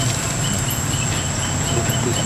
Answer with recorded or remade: recorded